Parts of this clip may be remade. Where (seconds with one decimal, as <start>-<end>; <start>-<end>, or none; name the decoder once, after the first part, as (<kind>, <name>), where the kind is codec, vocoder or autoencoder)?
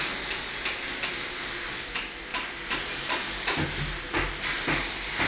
none